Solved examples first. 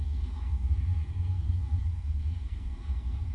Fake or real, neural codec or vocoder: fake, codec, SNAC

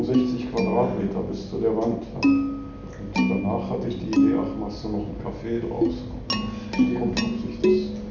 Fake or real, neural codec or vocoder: real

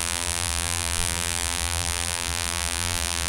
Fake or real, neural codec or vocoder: fake, vocoder, BigVGAN v2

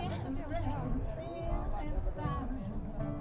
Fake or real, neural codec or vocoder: real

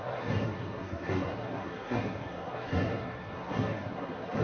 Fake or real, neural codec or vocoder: fake, codec, SNAC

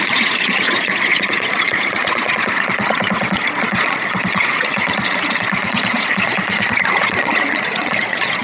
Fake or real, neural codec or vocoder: fake, vocoder, Vocos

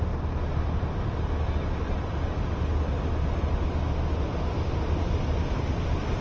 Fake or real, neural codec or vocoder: real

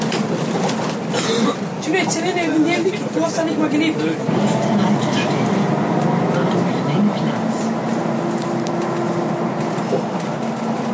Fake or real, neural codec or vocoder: real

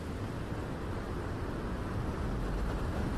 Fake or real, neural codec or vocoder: real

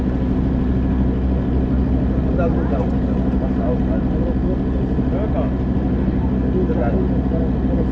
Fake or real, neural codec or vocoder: real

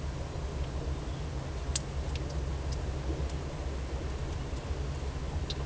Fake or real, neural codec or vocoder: real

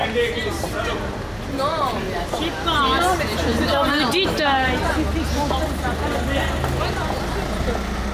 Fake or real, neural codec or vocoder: real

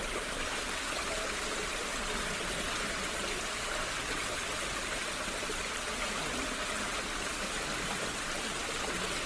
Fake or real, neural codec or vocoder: real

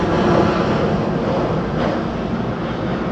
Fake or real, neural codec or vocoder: real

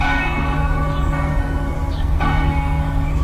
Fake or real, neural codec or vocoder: fake, codec, SNAC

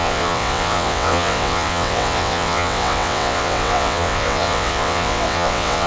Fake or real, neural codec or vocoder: fake, vocoder, WaveNeXt